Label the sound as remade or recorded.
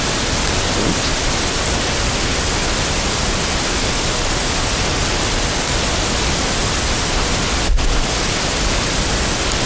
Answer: recorded